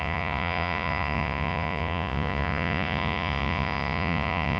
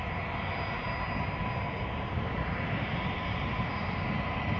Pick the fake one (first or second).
first